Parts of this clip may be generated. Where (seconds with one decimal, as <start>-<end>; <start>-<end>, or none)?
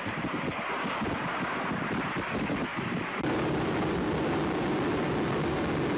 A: 2.7-5.5